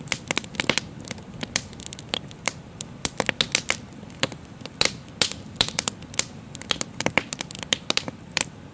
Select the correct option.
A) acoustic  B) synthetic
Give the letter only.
A